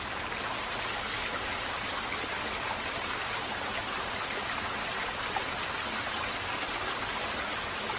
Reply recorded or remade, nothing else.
recorded